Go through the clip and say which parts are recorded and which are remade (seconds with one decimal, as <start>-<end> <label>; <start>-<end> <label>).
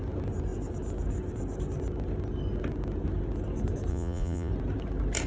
0.0-3.9 recorded; 3.9-4.5 remade; 4.5-5.3 recorded